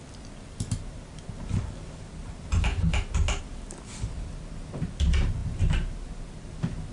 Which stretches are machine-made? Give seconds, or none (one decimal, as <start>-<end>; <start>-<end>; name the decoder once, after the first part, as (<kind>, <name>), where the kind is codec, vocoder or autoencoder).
none